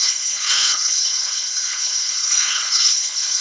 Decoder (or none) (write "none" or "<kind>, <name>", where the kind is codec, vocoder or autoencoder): codec, HILCodec